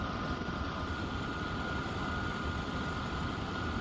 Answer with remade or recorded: recorded